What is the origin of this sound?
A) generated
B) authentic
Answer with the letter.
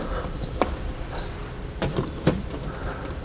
A